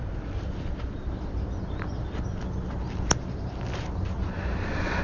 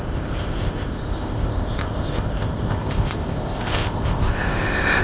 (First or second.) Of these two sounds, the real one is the first